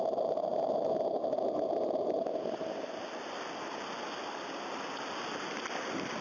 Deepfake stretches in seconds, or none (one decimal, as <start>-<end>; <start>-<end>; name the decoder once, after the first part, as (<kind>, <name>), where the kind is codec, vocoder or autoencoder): none